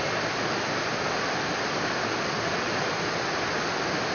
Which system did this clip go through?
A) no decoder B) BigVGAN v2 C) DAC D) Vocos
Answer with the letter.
A